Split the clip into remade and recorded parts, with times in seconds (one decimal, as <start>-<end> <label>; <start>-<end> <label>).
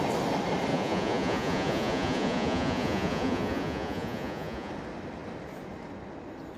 0.0-0.7 recorded; 0.7-4.7 remade; 4.7-6.6 recorded